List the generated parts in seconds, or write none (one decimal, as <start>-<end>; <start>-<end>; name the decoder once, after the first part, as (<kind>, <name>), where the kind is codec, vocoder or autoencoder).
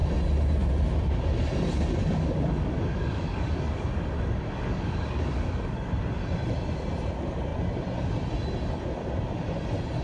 2.0-5.9 (codec, DAC)